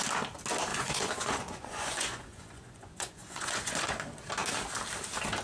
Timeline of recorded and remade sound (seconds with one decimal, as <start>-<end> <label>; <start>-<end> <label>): 0.0-0.7 recorded; 0.7-3.9 remade; 3.9-5.4 recorded

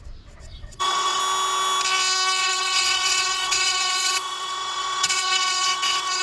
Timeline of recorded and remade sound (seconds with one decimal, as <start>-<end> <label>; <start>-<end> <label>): 0.0-0.4 recorded; 0.4-1.2 remade; 1.2-2.4 recorded; 2.4-6.2 remade

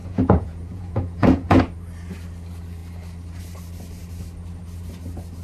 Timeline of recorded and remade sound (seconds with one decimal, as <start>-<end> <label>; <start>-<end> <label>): 0.0-1.6 remade; 1.6-5.4 recorded

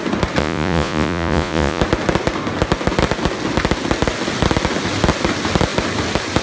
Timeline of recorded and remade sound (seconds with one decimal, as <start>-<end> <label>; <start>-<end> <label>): 0.0-0.4 recorded; 0.4-1.8 remade; 1.8-6.4 recorded

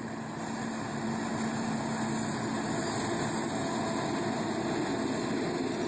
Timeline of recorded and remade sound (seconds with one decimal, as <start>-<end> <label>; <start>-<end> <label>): 0.0-5.9 recorded